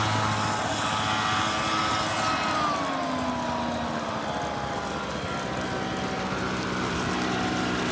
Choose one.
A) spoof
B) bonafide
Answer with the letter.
B